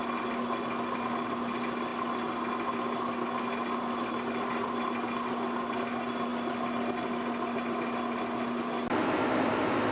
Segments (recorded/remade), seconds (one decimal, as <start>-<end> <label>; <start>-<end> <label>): 0.0-9.9 recorded